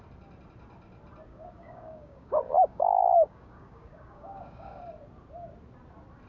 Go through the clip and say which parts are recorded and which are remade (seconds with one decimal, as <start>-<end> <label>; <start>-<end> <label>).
0.0-1.3 recorded; 1.3-4.8 remade; 4.8-6.3 recorded